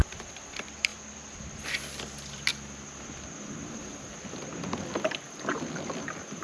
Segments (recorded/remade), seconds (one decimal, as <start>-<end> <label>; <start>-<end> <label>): 0.0-0.9 remade; 0.9-2.0 recorded; 2.0-2.5 remade; 2.5-6.4 recorded